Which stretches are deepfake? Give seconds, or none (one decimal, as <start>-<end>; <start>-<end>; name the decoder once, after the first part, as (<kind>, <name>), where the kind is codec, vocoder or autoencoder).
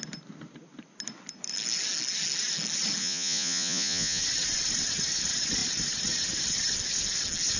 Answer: 3.0-4.2 (vocoder, Vocos)